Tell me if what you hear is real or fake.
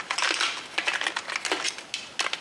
real